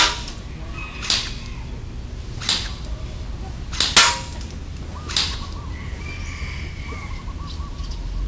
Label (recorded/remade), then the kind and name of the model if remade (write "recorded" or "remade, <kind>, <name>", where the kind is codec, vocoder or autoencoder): recorded